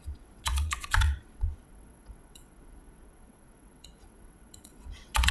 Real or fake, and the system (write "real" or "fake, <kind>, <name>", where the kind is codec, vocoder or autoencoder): fake, vocoder, WaveNeXt